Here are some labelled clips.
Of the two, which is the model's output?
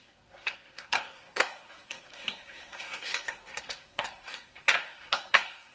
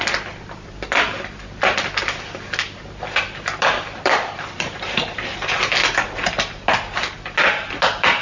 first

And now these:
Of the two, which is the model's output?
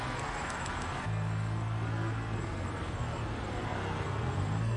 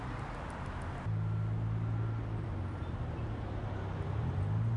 first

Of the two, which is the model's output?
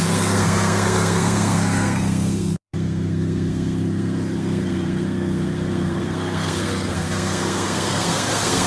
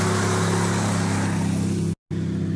first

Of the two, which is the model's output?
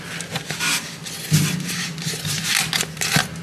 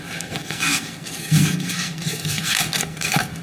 second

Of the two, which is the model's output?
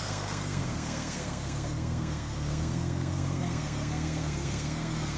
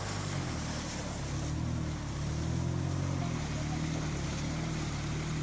first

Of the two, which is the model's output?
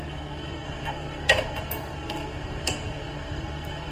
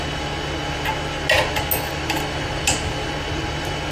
first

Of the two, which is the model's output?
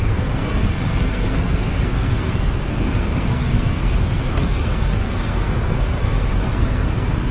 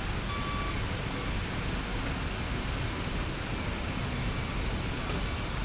first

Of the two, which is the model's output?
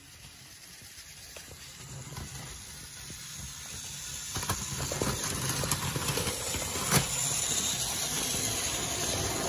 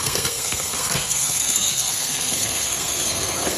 second